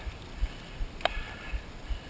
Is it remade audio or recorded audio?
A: recorded